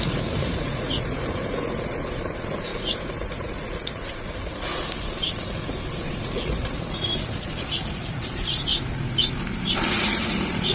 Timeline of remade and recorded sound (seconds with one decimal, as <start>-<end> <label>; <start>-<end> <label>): 0.0-8.7 remade; 8.7-9.9 recorded; 9.9-10.7 remade